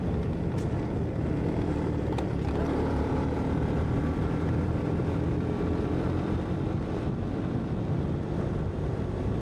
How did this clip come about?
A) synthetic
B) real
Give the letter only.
A